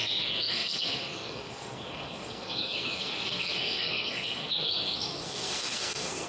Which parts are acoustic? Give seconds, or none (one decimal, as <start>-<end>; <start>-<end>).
none